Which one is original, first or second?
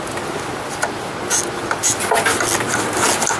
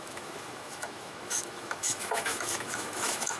first